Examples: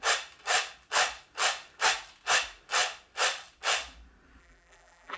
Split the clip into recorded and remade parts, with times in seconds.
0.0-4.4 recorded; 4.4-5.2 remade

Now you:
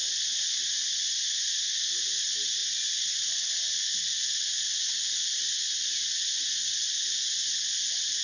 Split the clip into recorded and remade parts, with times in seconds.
0.0-8.2 recorded

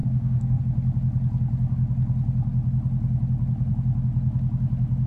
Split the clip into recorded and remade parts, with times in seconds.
0.0-0.6 remade; 0.6-5.1 recorded

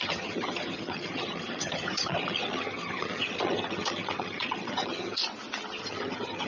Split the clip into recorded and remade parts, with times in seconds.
0.0-5.2 remade; 5.2-5.8 recorded; 5.8-6.5 remade

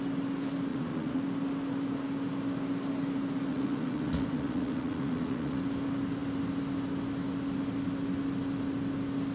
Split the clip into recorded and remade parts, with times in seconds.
0.0-0.7 recorded; 0.7-1.2 remade; 1.2-3.5 recorded; 3.5-5.6 remade; 5.6-9.3 recorded